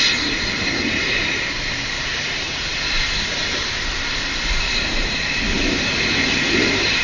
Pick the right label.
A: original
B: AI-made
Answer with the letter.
B